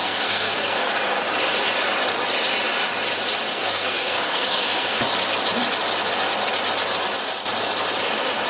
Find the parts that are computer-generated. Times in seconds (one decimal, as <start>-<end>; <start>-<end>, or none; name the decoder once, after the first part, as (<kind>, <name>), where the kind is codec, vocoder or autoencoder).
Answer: 0.0-0.9 (codec, SNAC); 3.5-5.0

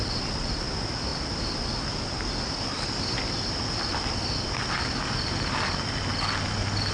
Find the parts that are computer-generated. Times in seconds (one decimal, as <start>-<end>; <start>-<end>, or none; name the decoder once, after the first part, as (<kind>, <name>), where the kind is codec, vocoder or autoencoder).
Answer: none